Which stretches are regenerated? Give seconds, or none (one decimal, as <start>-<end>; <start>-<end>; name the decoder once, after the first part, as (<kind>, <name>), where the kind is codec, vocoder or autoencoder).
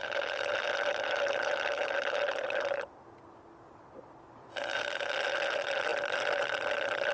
none